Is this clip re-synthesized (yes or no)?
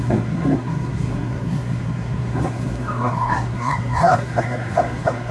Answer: yes